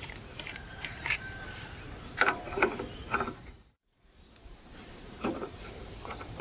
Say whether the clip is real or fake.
fake